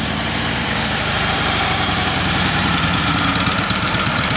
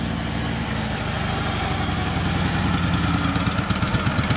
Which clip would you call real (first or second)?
second